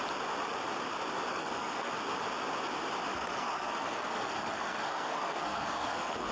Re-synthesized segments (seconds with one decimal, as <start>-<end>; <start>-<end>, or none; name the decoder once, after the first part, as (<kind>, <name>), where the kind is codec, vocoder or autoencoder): 1.3-1.9 (codec, SNAC); 3.1-6.3